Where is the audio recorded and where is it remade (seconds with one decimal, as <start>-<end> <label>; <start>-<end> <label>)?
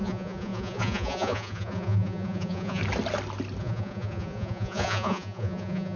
0.0-2.8 remade; 2.8-3.6 recorded; 3.6-6.0 remade